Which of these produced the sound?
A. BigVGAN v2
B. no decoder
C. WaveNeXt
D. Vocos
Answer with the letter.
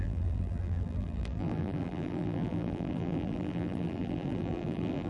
A